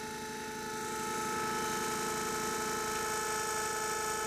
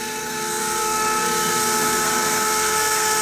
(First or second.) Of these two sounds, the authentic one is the first